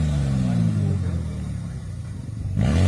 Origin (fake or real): real